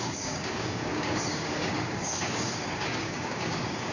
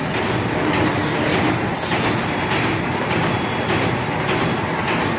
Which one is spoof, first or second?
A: first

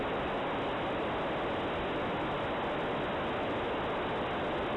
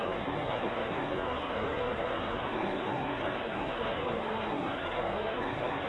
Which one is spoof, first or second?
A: second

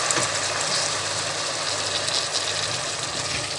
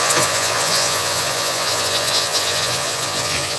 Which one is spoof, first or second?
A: second